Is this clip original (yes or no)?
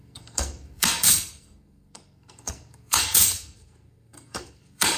no